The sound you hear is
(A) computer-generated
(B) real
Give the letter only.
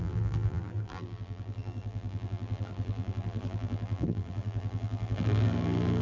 A